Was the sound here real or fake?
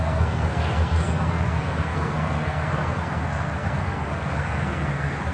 fake